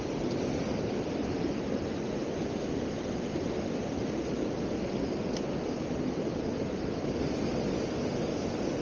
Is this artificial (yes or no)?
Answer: no